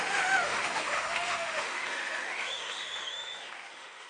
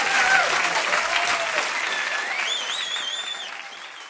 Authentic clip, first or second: second